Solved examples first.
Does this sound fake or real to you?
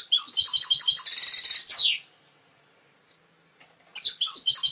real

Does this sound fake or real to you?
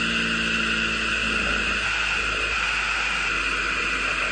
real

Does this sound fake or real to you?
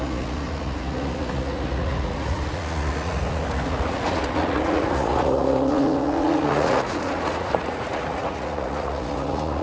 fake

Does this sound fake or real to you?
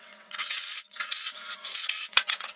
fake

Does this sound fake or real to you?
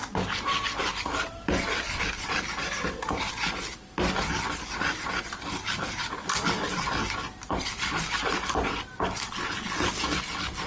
real